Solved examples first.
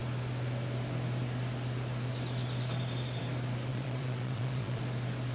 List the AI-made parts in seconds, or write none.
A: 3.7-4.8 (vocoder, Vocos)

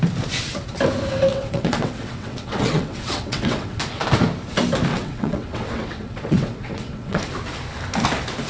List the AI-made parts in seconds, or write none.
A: 1.3-3.8 (vocoder, WaveNeXt); 4.9-7.2

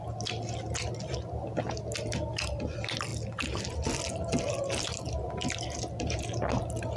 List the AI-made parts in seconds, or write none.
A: none

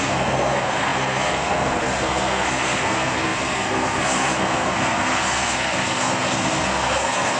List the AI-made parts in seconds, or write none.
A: 0.0-7.4 (codec, SNAC)

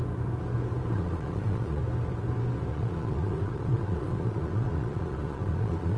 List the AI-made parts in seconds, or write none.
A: 0.9-1.8 (vocoder, Vocos); 2.7-6.0